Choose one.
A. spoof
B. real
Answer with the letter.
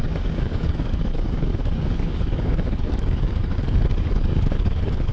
A